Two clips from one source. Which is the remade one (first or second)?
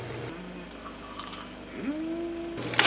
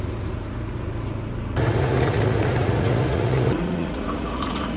second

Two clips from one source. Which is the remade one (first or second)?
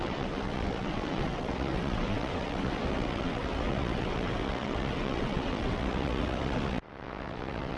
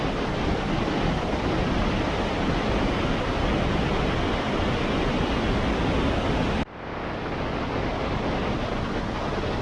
first